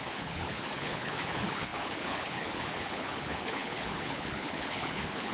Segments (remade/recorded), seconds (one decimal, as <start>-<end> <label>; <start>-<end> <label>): 0.0-5.3 remade